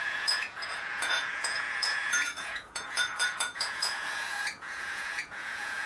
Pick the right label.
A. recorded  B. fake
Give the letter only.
B